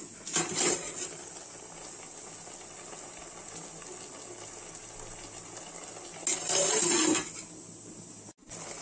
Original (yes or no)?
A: yes